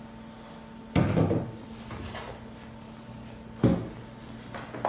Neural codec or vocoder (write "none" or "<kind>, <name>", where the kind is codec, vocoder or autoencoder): none